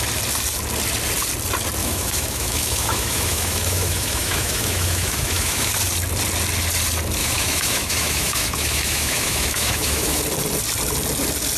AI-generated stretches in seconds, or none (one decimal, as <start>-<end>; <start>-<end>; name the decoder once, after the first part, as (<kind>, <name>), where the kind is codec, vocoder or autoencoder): 1.8-5.7 (autoencoder, DAC-VAE); 7.2-10.2

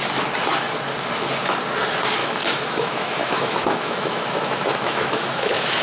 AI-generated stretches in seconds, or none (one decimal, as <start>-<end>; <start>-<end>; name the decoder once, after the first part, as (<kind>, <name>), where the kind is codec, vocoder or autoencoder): 2.2-5.8 (autoencoder, DAC-VAE)